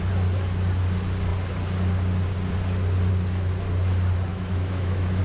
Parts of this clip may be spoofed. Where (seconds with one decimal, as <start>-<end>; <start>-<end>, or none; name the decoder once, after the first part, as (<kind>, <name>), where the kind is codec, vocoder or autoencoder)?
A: 4.3-5.2 (autoencoder, DAC-VAE)